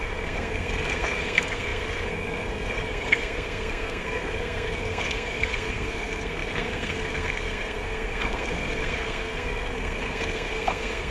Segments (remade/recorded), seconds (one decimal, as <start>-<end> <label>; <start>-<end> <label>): 0.0-11.1 remade